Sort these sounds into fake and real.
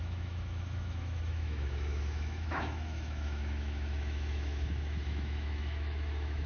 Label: fake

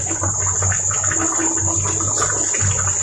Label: real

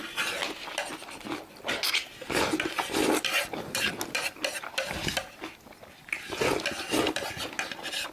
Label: real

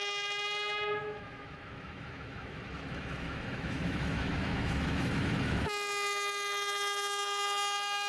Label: fake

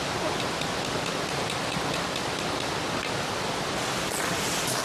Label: real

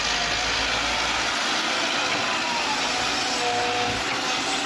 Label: real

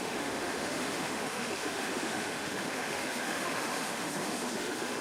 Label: fake